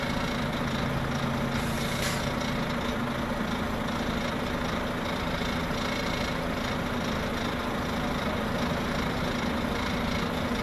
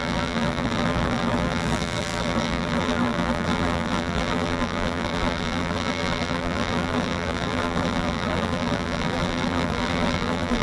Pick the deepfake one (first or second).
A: second